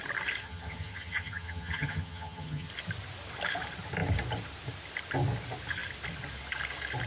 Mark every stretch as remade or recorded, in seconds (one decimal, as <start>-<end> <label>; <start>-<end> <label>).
0.0-0.4 recorded; 0.4-2.7 remade; 2.7-7.1 recorded